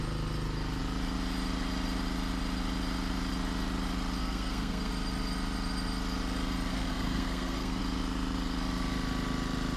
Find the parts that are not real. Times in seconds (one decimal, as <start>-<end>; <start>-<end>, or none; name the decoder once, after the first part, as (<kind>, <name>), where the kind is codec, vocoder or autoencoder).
4.2-4.9 (codec, SNAC); 6.7-7.8